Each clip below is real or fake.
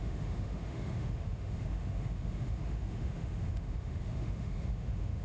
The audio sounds fake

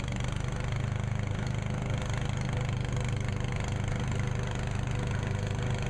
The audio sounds real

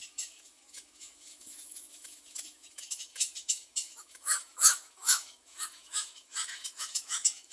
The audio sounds fake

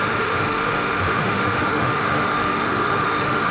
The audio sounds fake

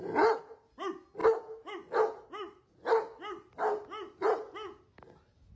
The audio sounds real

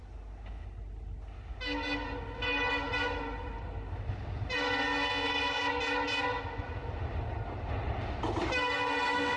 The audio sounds real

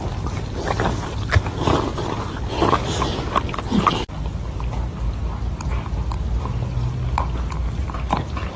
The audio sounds real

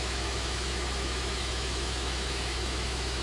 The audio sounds fake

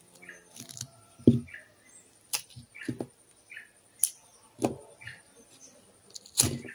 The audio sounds real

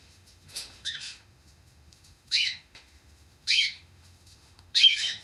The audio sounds fake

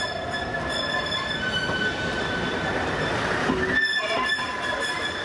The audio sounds real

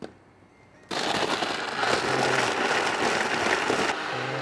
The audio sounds real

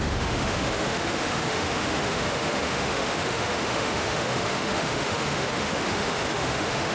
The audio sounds fake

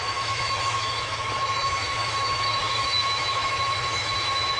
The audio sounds fake